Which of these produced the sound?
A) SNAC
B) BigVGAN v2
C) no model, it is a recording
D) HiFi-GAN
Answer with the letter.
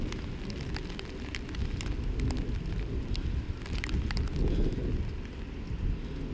C